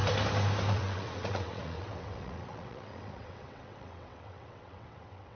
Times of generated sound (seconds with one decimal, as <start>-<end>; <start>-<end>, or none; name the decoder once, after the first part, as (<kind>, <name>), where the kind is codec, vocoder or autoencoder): 0.7-5.4 (vocoder, WaveNeXt)